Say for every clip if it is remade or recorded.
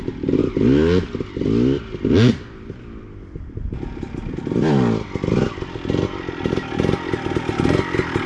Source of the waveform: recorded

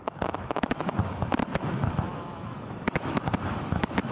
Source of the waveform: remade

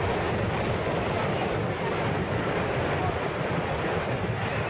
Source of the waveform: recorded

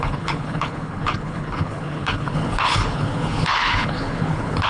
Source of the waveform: remade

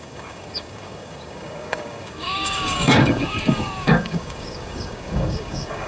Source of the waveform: remade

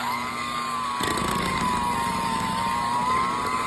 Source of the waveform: remade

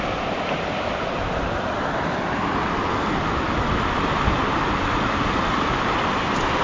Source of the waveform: recorded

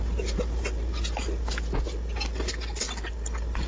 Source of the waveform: recorded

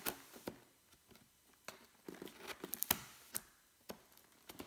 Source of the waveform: recorded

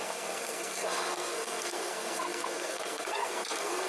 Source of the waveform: remade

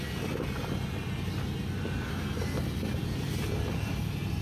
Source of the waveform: recorded